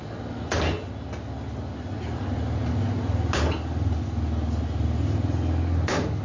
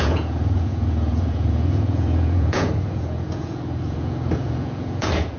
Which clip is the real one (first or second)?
first